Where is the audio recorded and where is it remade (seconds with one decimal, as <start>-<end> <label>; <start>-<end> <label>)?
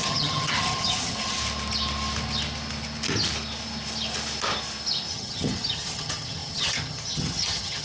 0.0-1.4 remade; 1.4-5.1 recorded; 5.1-7.8 remade